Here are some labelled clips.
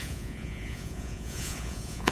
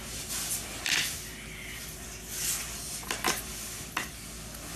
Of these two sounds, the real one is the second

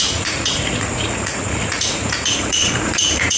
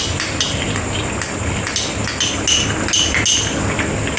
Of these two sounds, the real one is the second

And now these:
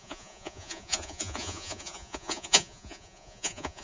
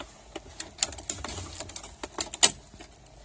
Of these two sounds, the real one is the second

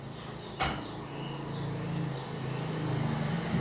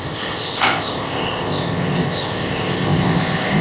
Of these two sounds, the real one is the first